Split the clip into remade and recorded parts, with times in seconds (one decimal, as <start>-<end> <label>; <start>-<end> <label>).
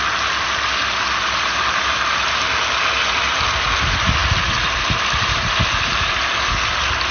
0.0-7.1 recorded